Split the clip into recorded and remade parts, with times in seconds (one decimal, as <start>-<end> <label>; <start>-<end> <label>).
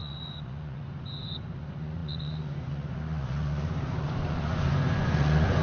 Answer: 0.0-5.6 remade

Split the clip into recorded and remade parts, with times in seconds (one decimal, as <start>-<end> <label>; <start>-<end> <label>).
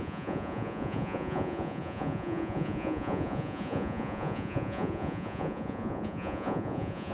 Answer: 0.0-7.1 remade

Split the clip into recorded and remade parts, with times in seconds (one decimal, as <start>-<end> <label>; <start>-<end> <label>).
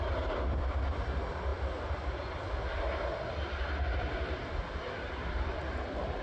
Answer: 0.0-6.2 recorded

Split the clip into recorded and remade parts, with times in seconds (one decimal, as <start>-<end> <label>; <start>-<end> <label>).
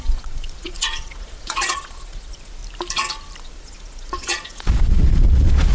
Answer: 0.0-2.6 remade; 2.6-3.4 recorded; 3.4-5.7 remade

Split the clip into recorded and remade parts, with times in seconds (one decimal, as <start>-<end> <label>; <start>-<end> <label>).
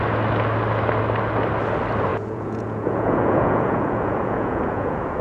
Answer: 0.0-2.1 recorded; 2.1-5.2 remade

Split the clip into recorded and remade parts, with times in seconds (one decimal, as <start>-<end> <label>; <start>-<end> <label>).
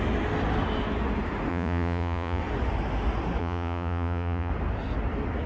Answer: 0.0-1.5 recorded; 1.5-2.4 remade; 2.4-3.4 recorded; 3.4-4.5 remade; 4.5-5.5 recorded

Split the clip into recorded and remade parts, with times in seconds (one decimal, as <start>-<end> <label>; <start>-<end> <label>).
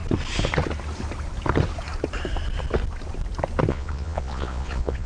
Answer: 0.0-3.7 recorded; 3.7-5.1 remade